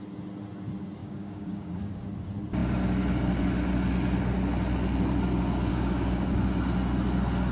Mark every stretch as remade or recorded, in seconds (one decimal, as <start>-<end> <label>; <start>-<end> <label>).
0.0-1.0 recorded; 1.0-2.0 remade; 2.0-5.7 recorded; 5.7-6.3 remade; 6.3-7.5 recorded